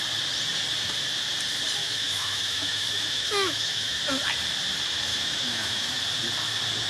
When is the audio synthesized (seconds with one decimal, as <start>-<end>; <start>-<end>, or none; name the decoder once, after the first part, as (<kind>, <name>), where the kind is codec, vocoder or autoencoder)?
1.8-4.0 (autoencoder, DAC-VAE); 5.1-6.0